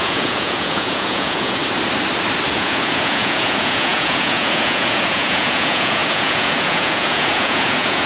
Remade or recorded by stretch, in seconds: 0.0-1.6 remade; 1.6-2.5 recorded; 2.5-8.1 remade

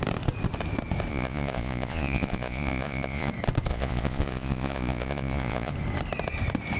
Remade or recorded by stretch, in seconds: 0.0-1.1 recorded; 1.1-3.3 remade; 3.3-3.7 recorded; 3.7-5.7 remade; 5.7-6.8 recorded

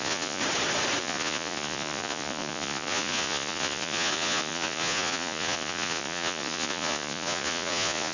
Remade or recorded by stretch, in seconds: 0.0-0.4 remade; 0.4-1.0 recorded; 1.0-8.1 remade